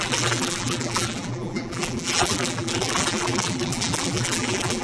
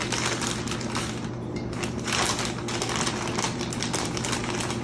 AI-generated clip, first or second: first